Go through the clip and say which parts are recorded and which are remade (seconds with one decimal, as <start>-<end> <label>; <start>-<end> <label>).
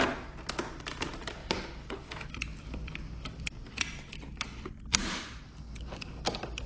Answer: 0.0-1.4 recorded; 1.4-5.4 remade; 5.4-6.7 recorded